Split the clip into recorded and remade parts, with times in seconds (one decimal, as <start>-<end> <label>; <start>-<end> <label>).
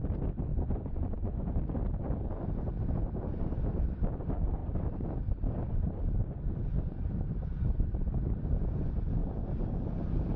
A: 0.0-0.5 recorded; 0.5-1.6 remade; 1.6-6.2 recorded; 6.2-7.1 remade; 7.1-10.4 recorded